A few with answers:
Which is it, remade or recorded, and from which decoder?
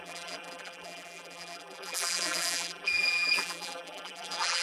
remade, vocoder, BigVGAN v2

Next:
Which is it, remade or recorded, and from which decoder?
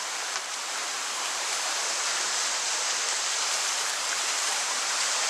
remade, vocoder, BigVGAN v2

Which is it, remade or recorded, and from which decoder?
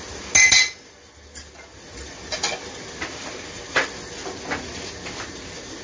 recorded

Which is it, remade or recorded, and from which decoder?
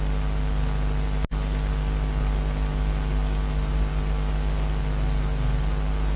recorded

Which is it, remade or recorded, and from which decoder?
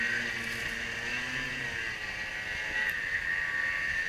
recorded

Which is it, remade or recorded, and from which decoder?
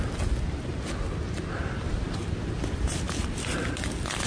recorded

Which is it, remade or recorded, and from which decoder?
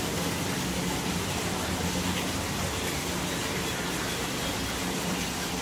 remade, vocoder, BigVGAN v2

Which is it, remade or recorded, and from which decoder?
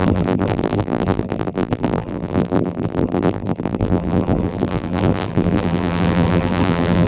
remade, vocoder, BigVGAN v2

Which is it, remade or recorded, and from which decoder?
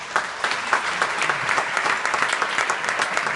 recorded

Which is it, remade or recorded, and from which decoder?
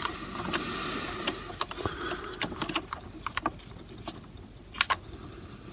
recorded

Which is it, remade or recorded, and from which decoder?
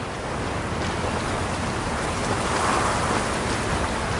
recorded